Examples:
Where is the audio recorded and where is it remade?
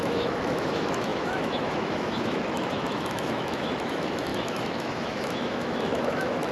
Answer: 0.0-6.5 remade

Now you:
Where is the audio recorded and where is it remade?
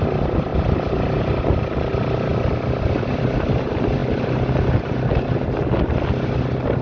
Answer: 0.0-6.8 recorded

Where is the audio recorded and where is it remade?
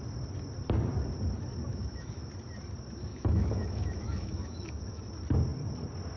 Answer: 0.0-1.7 recorded; 1.7-2.3 remade; 2.3-3.1 recorded; 3.1-5.0 remade; 5.0-6.2 recorded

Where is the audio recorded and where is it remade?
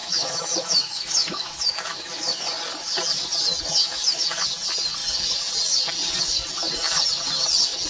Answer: 0.0-2.3 remade; 2.3-3.8 recorded; 3.8-4.4 remade; 4.4-7.9 recorded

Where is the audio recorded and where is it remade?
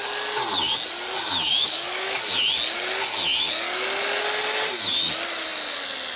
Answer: 0.0-1.5 recorded; 1.5-2.2 remade; 2.2-6.2 recorded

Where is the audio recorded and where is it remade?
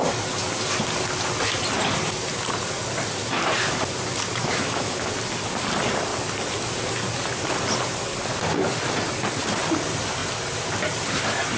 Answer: 0.0-4.4 recorded; 4.4-5.1 remade; 5.1-11.6 recorded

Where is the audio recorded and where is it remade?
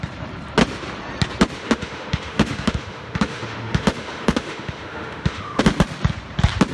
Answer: 0.0-1.6 recorded; 1.6-5.6 remade; 5.6-6.7 recorded